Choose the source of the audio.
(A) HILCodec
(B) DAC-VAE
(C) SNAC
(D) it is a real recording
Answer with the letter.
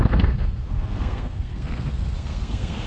C